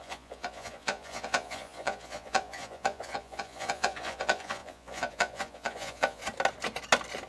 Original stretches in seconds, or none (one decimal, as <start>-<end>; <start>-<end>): 6.2-7.3